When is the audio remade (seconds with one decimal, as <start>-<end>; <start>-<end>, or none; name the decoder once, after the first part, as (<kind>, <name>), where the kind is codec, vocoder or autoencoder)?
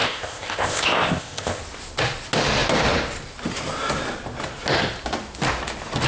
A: 0.0-1.6 (codec, ZipCodec)